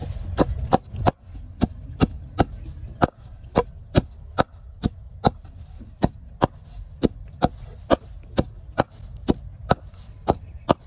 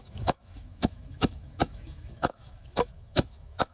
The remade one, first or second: second